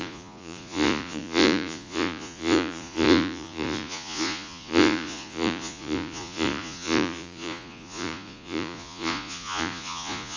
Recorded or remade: remade